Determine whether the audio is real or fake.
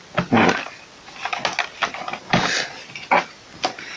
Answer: real